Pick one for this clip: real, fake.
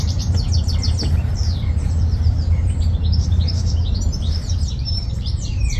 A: fake